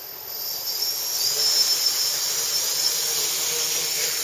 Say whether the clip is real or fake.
real